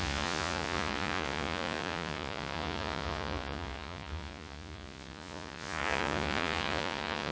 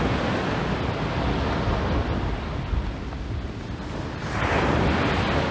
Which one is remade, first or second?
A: first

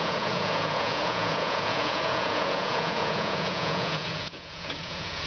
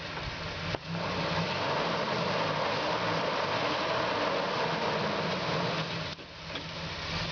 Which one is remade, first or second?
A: first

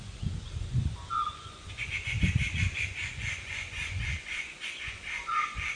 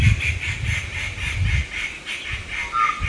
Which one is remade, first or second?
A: first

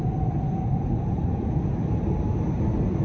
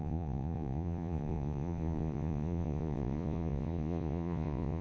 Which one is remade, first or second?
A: second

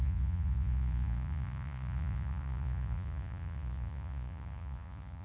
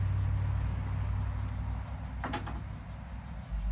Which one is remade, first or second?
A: first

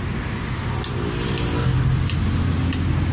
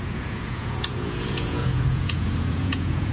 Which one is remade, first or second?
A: second